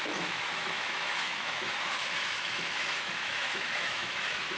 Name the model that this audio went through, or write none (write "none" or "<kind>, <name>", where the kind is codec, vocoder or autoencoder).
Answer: autoencoder, DAC-VAE